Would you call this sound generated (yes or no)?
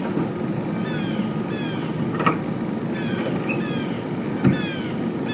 no